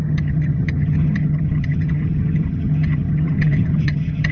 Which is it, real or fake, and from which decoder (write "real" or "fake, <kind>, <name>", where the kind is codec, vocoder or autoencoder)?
fake, vocoder, HiFi-GAN